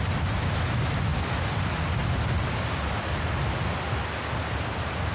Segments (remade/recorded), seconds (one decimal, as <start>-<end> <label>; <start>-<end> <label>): 0.0-1.1 recorded; 1.1-1.6 remade; 1.6-5.1 recorded